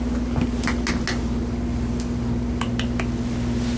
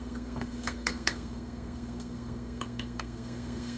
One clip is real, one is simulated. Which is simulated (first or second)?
second